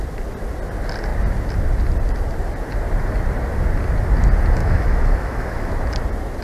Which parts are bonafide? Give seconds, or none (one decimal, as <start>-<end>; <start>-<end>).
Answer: 0.0-4.6; 5.7-6.4